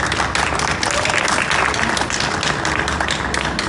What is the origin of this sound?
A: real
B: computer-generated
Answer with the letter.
A